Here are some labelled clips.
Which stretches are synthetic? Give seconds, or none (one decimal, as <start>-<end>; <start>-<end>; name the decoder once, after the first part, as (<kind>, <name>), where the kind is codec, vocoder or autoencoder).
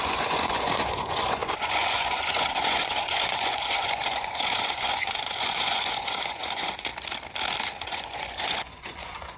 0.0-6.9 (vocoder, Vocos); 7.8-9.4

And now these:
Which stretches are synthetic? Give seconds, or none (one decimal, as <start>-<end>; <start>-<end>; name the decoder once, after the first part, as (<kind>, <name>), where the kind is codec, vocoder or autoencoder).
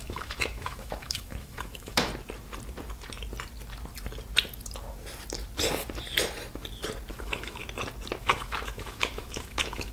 0.0-2.1 (autoencoder, DAC-VAE); 7.1-7.6; 8.2-9.9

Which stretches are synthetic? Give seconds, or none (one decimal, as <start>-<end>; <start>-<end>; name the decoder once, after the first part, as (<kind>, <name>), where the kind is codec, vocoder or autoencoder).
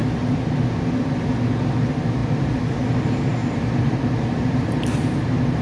0.0-0.5 (vocoder, BigVGAN v2); 3.4-5.6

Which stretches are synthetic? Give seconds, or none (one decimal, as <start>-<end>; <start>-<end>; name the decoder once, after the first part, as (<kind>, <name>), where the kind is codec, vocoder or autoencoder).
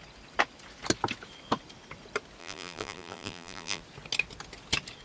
2.4-3.8 (vocoder, BigVGAN v2)